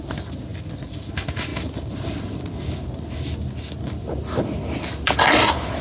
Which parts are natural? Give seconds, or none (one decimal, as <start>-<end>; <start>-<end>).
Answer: 0.0-5.8